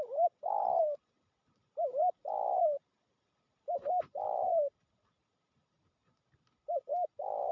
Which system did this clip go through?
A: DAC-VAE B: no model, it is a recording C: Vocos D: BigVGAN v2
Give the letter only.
D